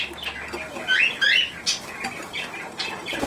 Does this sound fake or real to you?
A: real